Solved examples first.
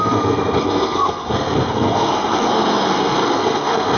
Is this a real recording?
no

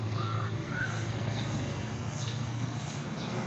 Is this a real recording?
no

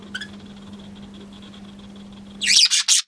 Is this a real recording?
yes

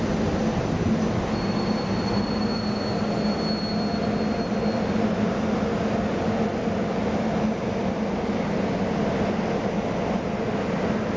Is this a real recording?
yes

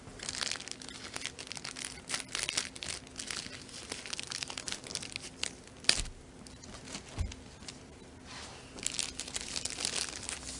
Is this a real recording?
yes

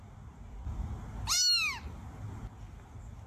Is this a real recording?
yes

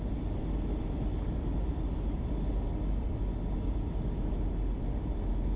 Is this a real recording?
yes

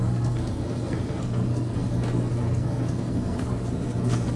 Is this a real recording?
no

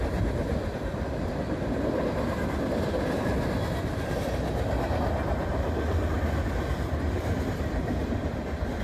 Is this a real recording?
yes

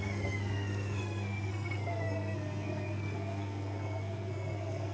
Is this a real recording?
no